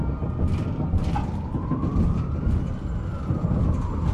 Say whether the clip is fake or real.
real